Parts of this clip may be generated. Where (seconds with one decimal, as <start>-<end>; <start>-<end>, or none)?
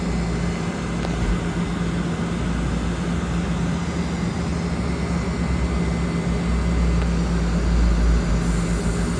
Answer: none